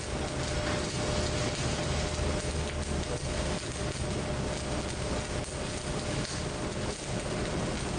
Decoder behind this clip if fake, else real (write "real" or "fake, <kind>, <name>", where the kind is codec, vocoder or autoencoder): real